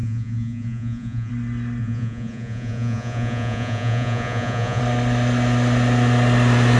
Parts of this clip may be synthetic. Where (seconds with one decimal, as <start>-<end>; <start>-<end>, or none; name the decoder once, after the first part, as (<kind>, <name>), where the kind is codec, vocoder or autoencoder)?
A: 0.0-1.3 (vocoder, Vocos); 1.8-4.8